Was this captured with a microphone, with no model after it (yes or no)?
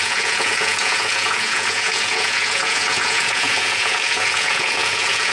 no